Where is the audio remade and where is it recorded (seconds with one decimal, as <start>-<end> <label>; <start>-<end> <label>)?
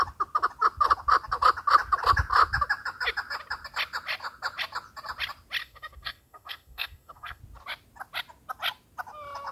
0.0-5.6 recorded; 5.6-7.4 remade; 7.4-9.5 recorded